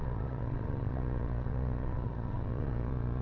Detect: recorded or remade remade